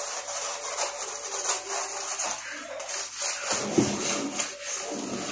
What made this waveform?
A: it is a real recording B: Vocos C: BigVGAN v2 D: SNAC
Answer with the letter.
A